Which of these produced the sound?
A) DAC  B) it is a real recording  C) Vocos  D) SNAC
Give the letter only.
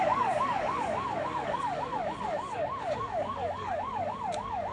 A